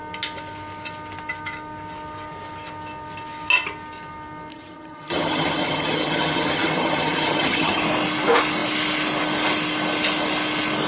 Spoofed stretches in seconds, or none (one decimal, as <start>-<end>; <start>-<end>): 4.5-7.8